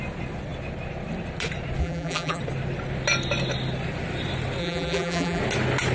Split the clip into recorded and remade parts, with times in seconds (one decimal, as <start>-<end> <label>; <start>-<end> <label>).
0.0-1.8 recorded; 1.8-2.4 remade; 2.4-4.6 recorded; 4.6-5.4 remade; 5.4-5.9 recorded